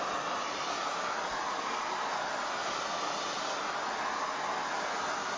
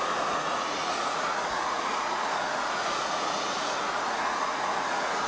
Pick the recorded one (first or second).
first